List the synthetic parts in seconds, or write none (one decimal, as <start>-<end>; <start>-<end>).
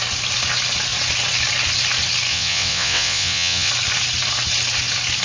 2.3-3.7